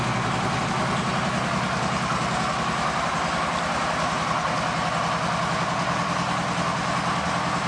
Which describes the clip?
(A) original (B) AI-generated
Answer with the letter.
A